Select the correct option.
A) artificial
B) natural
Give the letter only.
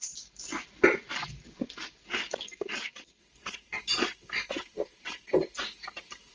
B